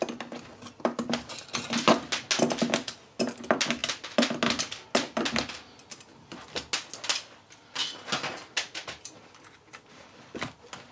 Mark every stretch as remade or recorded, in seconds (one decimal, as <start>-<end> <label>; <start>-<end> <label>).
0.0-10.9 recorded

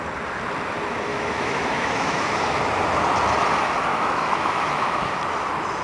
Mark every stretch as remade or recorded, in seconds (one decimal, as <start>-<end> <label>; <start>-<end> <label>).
0.0-1.1 recorded; 1.1-2.4 remade; 2.4-3.9 recorded; 3.9-5.2 remade; 5.2-5.8 recorded

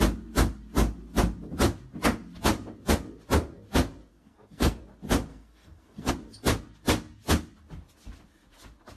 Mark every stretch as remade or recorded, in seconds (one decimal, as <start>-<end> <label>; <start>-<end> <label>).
0.0-4.1 recorded; 4.1-4.8 remade; 4.8-5.3 recorded; 5.3-6.1 remade; 6.1-9.0 recorded

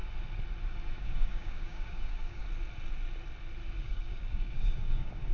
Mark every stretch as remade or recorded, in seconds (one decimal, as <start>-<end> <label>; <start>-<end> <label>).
0.0-1.0 recorded; 1.0-2.4 remade; 2.4-3.8 recorded; 3.8-5.3 remade